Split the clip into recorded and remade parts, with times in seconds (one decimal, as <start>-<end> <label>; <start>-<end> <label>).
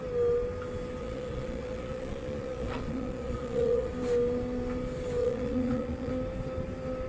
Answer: 0.0-1.0 recorded; 1.0-3.9 remade; 3.9-5.2 recorded; 5.2-6.1 remade; 6.1-7.1 recorded